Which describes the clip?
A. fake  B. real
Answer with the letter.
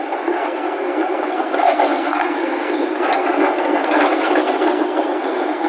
A